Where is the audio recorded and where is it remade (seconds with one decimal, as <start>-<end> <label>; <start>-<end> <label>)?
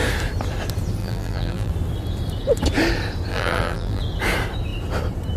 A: 0.0-1.0 recorded; 1.0-1.7 remade; 1.7-3.3 recorded; 3.3-4.0 remade; 4.0-5.4 recorded